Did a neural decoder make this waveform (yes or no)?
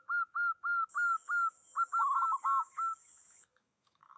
yes